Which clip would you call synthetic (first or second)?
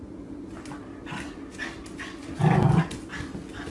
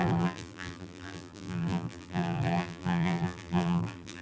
second